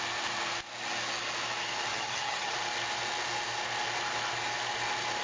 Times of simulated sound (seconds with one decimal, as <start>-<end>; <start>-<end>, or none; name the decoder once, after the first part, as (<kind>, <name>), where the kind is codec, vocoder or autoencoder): 1.9-2.5 (vocoder, HiFi-GAN)